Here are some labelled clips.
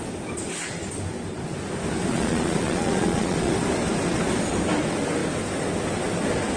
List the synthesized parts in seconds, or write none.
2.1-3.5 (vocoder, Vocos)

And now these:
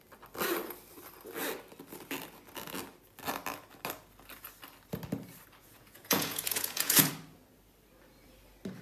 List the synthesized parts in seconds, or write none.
5.6-7.1 (vocoder, Vocos)